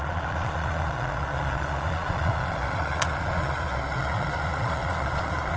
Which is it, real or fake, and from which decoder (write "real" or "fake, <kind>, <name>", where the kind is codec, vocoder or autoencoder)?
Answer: fake, vocoder, Vocos